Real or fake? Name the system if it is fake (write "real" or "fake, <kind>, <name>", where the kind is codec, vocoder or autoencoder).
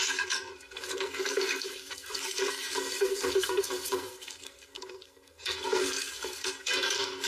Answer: fake, codec, SNAC